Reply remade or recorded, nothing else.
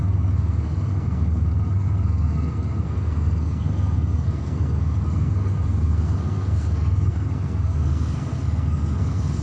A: remade